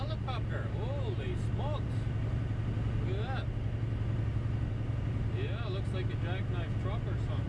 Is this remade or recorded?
recorded